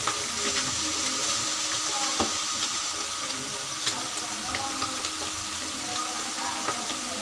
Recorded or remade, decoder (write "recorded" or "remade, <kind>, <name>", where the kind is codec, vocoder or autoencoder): recorded